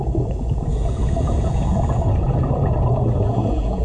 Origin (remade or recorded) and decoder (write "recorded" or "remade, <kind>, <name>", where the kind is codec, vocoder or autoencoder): remade, vocoder, Vocos